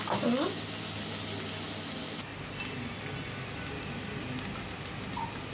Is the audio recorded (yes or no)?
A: yes